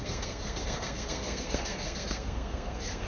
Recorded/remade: remade